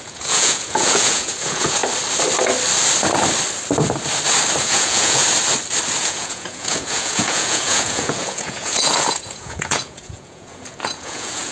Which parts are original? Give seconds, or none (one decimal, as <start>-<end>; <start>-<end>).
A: 1.8-4.6; 5.2-6.0